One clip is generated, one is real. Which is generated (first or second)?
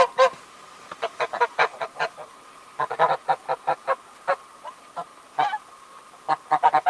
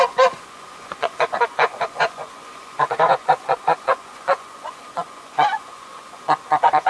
second